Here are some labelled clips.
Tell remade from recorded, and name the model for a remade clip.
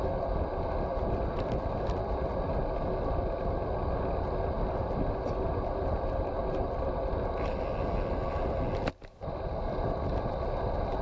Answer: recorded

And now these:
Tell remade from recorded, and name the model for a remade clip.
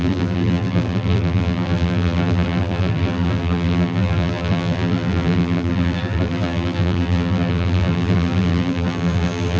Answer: remade, vocoder, BigVGAN v2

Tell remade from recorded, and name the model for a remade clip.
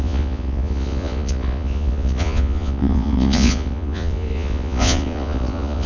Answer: remade, vocoder, Vocos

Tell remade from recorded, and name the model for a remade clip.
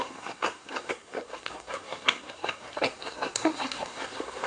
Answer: remade, codec, SNAC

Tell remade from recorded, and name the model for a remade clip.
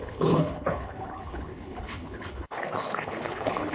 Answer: remade, codec, HILCodec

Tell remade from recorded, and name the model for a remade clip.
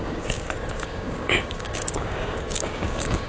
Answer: remade, codec, DAC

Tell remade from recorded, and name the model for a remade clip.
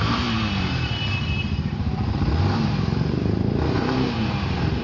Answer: remade, vocoder, BigVGAN v2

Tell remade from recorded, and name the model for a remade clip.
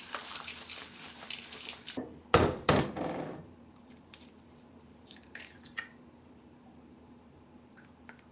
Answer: remade, vocoder, BigVGAN v2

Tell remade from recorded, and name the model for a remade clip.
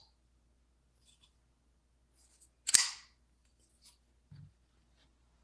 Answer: recorded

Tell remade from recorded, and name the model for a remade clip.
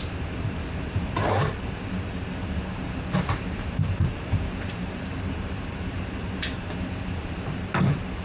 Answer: remade, vocoder, BigVGAN v2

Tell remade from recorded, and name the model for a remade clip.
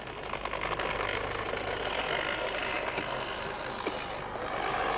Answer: recorded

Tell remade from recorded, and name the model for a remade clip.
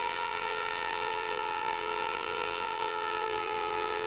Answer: remade, vocoder, BigVGAN v2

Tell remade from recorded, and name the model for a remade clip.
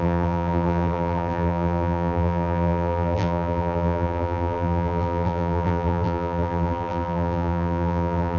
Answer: remade, vocoder, BigVGAN v2